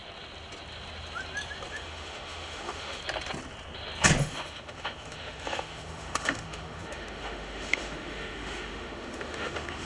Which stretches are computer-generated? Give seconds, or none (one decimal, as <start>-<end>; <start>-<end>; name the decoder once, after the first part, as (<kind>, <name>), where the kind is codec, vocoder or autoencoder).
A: 1.7-3.0 (autoencoder, DAC-VAE); 4.2-9.8